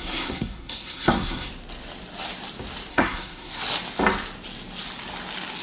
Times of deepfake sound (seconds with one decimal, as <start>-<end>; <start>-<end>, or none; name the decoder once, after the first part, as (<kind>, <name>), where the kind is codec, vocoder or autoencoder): 0.0-1.5 (codec, SNAC); 2.9-3.6